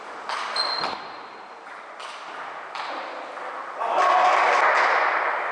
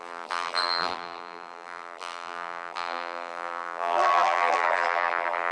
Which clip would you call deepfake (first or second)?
second